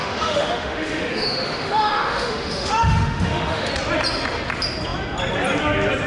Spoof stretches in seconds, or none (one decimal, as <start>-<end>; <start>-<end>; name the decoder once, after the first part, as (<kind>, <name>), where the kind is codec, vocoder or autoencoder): 0.0-3.7 (autoencoder, DAC-VAE)